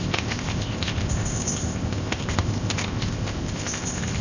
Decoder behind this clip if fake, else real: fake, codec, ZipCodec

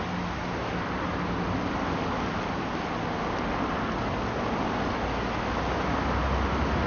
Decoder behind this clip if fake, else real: real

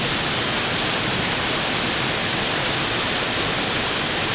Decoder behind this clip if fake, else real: real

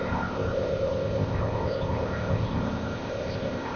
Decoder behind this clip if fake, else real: fake, codec, ZipCodec